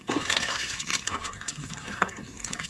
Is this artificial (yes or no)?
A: yes